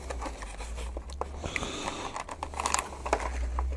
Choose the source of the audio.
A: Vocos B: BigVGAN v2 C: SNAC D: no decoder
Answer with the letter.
D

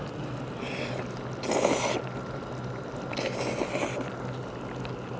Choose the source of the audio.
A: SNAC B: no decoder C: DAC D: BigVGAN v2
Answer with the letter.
B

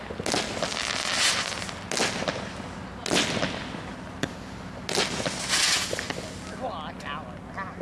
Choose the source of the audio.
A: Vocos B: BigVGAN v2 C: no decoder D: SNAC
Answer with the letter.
C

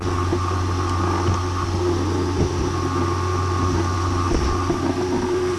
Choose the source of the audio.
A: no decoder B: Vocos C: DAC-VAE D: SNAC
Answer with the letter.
A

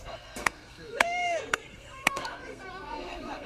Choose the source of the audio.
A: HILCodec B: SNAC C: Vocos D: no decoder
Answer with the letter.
B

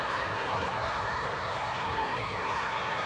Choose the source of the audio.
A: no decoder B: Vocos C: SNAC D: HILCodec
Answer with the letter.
C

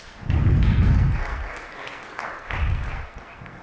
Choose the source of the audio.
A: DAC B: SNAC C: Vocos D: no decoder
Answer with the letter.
B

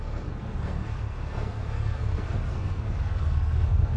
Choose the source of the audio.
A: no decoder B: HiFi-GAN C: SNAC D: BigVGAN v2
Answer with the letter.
C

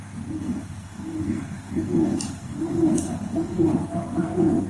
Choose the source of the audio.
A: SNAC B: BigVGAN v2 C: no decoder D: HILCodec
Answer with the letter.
A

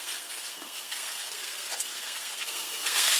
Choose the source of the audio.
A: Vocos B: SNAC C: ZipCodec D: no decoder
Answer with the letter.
B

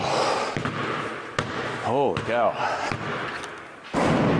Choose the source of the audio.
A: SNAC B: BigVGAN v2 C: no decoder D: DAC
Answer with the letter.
C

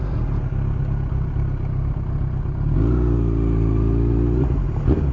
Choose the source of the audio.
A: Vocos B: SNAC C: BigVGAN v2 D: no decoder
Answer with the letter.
D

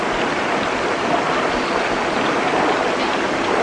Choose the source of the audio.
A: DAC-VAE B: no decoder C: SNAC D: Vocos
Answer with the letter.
B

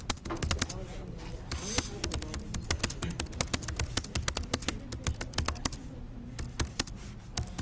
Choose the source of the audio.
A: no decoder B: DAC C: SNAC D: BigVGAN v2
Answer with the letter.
A